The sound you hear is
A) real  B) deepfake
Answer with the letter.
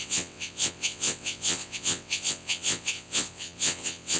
B